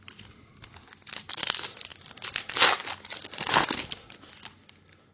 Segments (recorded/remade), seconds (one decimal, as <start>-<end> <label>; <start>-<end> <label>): 0.0-5.1 recorded